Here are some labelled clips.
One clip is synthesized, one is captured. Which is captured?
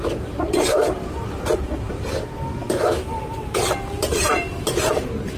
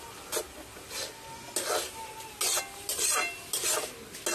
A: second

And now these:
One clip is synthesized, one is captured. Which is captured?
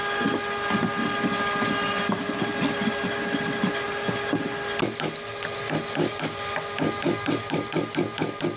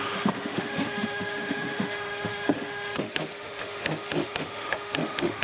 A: first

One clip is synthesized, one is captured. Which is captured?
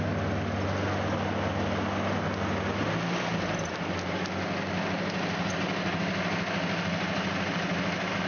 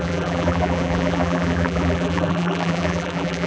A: first